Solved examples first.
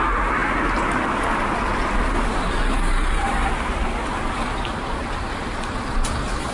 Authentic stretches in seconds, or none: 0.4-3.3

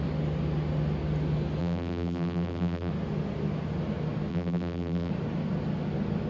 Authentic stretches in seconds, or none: 0.0-1.6; 2.9-4.3; 5.1-6.3